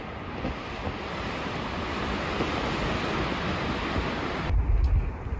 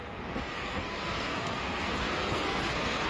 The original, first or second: first